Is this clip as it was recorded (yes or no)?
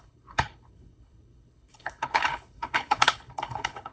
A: no